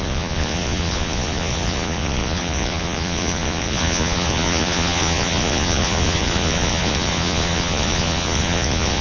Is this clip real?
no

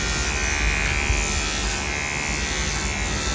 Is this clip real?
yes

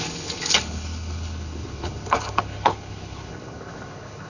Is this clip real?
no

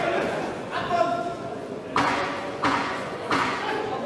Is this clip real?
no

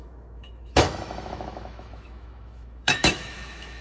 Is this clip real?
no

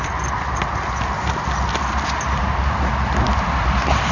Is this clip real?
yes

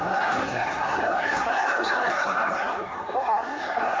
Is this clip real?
no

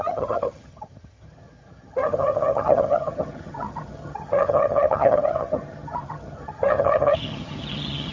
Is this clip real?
no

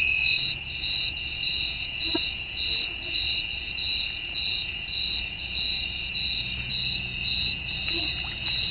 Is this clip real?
no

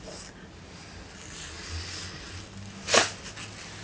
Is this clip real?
yes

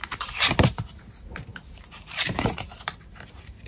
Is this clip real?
yes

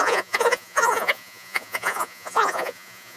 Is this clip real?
no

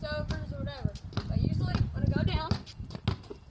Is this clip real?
yes